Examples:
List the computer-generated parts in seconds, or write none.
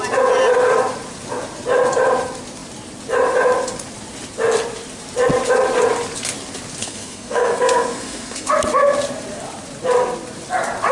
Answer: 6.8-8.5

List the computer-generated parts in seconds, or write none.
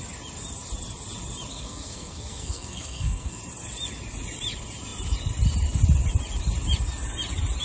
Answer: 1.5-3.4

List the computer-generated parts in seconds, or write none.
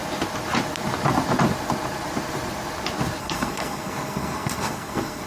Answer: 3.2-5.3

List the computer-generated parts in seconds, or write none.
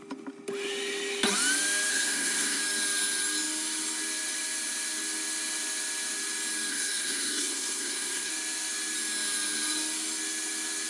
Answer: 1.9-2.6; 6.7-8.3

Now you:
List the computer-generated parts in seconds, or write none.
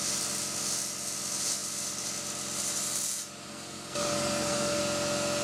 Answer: 3.5-4.8